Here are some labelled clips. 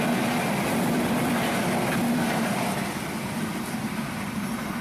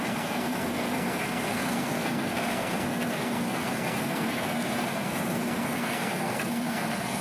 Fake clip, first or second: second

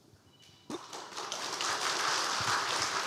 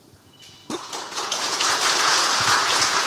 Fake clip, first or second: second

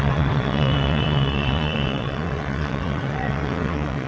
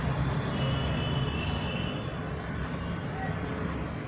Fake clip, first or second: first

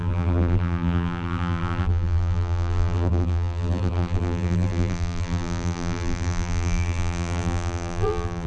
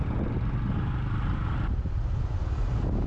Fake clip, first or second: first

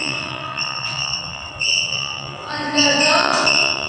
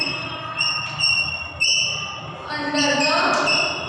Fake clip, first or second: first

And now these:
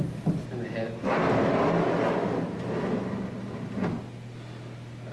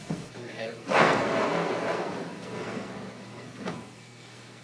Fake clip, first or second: second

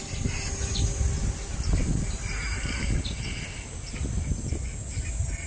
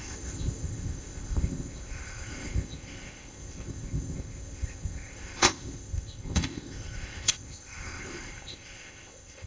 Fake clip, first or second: second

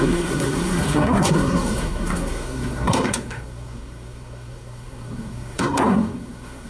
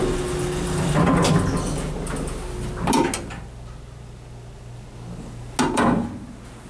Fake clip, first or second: first